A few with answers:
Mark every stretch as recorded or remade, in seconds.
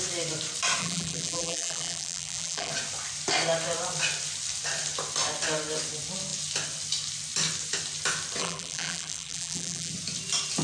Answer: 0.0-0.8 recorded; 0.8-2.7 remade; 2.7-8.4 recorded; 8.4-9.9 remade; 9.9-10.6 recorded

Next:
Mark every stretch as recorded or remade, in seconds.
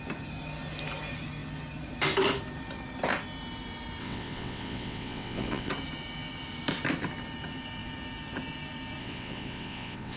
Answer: 0.0-4.0 recorded; 4.0-5.7 remade; 5.7-9.0 recorded; 9.0-10.2 remade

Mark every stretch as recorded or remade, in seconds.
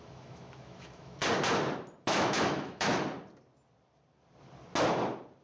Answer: 0.0-1.2 remade; 1.2-2.0 recorded; 2.0-2.9 remade; 2.9-5.4 recorded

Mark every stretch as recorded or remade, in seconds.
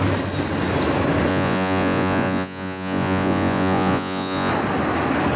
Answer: 0.0-1.3 recorded; 1.3-4.5 remade; 4.5-5.4 recorded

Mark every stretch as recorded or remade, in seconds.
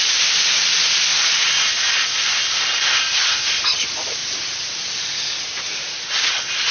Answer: 0.0-6.7 recorded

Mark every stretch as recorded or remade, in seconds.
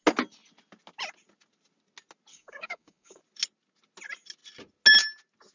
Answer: 0.0-2.3 recorded; 2.3-3.2 remade; 3.2-5.5 recorded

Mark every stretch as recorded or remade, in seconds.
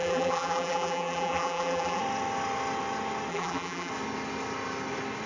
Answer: 0.0-2.0 remade; 2.0-3.3 recorded; 3.3-3.9 remade; 3.9-5.3 recorded